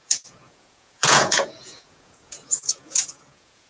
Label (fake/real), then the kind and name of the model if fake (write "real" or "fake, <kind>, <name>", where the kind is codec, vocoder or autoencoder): fake, vocoder, Vocos